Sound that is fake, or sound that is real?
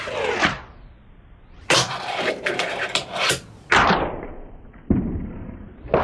fake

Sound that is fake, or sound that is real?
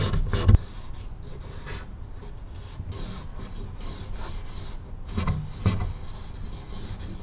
real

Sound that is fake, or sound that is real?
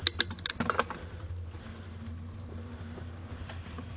real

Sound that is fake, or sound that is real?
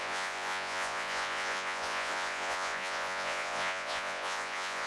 fake